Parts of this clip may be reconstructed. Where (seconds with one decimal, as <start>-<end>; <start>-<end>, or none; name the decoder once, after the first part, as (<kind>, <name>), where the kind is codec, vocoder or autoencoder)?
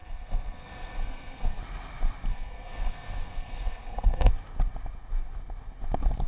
0.0-1.6 (codec, SNAC); 2.3-4.3